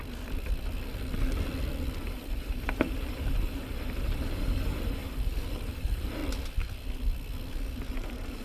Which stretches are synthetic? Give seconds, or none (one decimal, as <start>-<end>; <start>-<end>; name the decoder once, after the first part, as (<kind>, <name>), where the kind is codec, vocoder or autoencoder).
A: 2.0-6.2 (vocoder, BigVGAN v2); 7.9-8.4